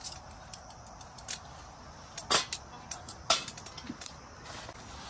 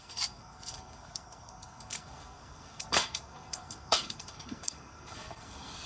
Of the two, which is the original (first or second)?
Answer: first